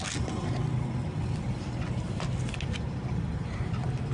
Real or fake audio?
real